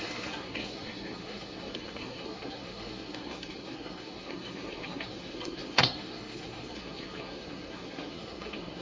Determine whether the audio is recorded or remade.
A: remade